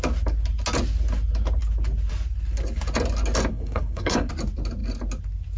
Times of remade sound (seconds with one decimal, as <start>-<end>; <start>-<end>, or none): 3.5-4.3